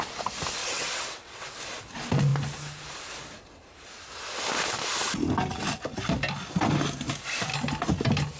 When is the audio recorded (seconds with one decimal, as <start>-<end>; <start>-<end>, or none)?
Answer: 0.0-0.6; 1.6-8.4